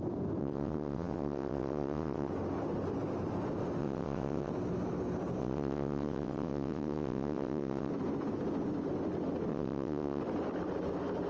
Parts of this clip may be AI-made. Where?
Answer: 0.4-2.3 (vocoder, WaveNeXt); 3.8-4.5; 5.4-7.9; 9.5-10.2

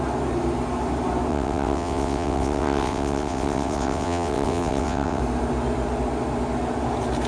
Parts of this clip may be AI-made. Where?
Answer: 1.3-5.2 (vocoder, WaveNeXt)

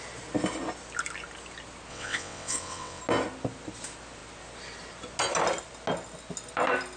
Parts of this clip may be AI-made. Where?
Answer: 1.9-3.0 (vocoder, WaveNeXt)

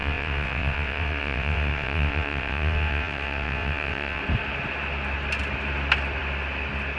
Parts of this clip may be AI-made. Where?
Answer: 0.0-4.2 (vocoder, WaveNeXt)

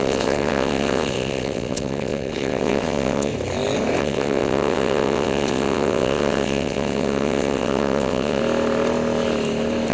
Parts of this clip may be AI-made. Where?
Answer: 0.0-3.3 (vocoder, WaveNeXt); 4.0-8.4

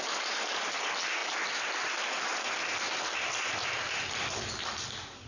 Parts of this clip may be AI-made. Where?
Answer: none